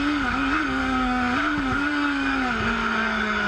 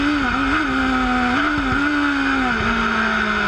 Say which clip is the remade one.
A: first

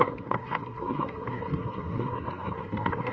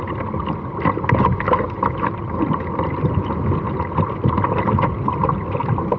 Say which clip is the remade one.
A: first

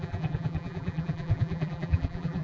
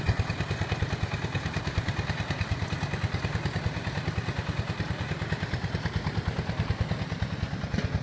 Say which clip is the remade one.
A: first